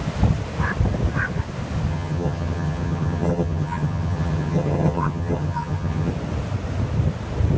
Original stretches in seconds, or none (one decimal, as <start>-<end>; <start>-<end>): 0.0-1.9; 6.1-7.6

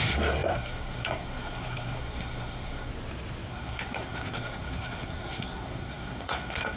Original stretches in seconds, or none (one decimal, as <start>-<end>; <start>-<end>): 2.9-3.5

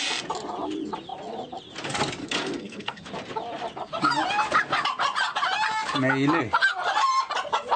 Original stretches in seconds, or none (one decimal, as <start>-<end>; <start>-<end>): 0.0-2.2; 3.1-7.8